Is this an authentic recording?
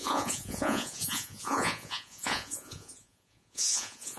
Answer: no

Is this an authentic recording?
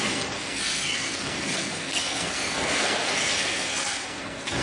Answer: no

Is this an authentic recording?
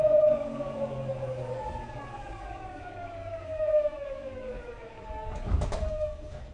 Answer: no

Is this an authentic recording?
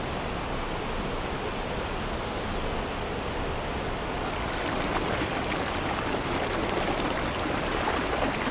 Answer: yes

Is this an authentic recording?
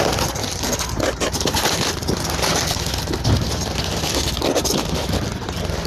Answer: yes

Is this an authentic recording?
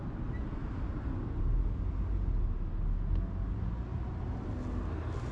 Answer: yes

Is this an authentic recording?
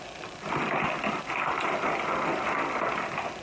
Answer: yes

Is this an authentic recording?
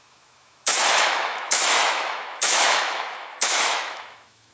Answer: no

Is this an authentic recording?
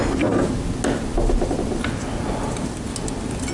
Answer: yes